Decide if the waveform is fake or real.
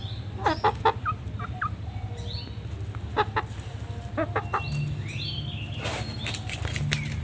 real